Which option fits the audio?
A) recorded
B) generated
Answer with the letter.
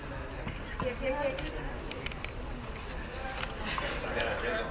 A